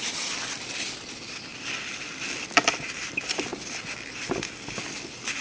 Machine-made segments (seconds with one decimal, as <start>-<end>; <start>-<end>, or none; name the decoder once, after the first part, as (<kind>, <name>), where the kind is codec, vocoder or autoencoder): 3.5-4.2 (vocoder, BigVGAN v2)